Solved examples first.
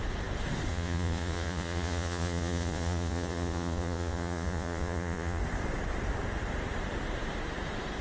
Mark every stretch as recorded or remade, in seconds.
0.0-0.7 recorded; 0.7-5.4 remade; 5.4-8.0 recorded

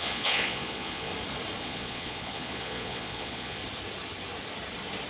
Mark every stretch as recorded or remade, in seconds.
0.0-1.1 remade; 1.1-1.6 recorded; 1.6-3.6 remade; 3.6-5.1 recorded

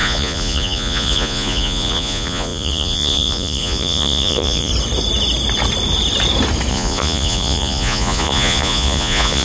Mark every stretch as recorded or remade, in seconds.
0.0-4.7 remade; 4.7-6.7 recorded; 6.7-9.4 remade

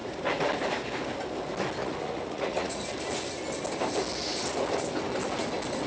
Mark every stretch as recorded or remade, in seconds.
0.0-1.8 recorded; 1.8-2.9 remade; 2.9-5.9 recorded

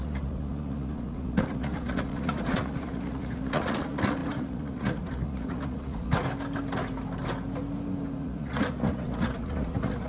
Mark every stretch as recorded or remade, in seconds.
0.0-6.2 remade; 6.2-8.2 recorded; 8.2-10.1 remade